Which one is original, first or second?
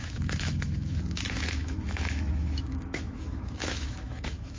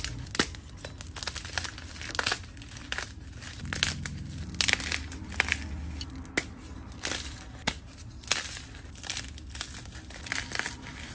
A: second